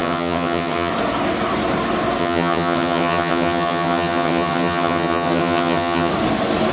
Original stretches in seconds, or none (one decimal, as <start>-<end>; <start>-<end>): 0.9-2.2; 6.1-6.7